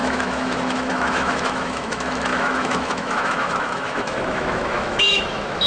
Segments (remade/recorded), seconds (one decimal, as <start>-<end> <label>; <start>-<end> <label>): 0.0-5.7 remade